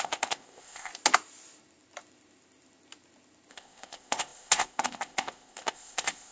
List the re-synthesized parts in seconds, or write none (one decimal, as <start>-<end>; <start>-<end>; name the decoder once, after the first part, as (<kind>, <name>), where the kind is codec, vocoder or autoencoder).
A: 0.0-0.9 (codec, ZipCodec); 3.5-6.3